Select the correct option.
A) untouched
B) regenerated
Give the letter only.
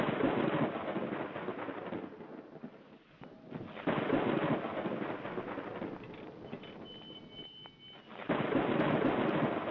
A